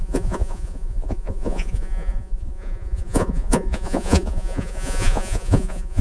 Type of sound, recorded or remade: remade